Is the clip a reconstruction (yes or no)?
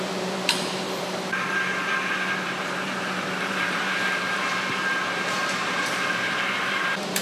yes